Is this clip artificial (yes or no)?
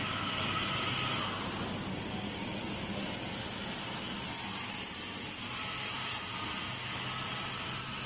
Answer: no